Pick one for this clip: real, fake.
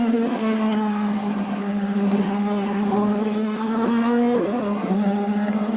fake